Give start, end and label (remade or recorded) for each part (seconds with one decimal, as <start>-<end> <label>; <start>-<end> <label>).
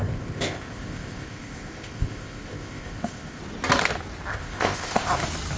0.0-3.4 remade; 3.4-4.3 recorded; 4.3-5.1 remade; 5.1-5.6 recorded